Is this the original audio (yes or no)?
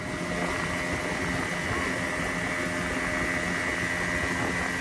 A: yes